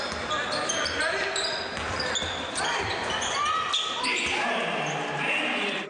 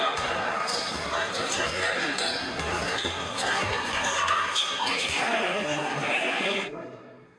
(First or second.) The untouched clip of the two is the first